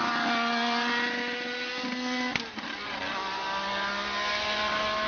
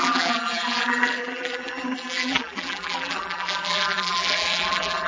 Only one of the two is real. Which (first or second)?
first